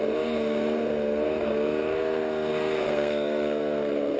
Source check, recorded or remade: remade